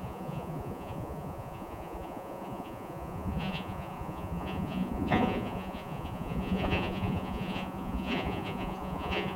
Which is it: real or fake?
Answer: fake